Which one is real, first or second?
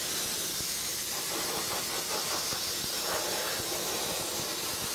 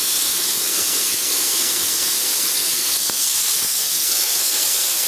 first